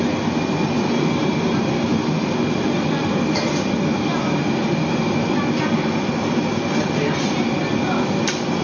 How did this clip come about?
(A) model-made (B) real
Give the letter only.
B